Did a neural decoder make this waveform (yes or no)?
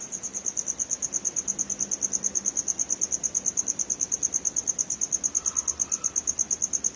no